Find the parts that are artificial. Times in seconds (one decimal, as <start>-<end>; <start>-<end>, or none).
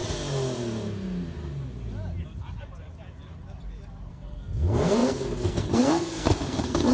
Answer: 4.1-6.9